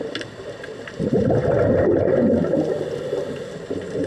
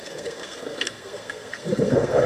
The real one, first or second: first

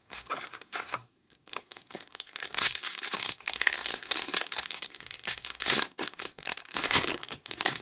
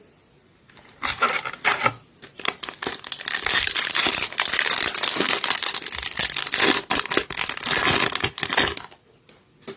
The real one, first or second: second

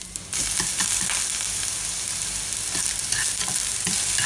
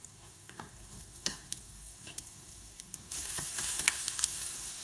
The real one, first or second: first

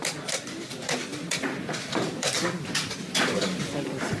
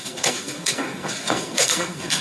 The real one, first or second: first